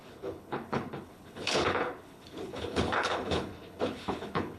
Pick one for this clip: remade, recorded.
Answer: remade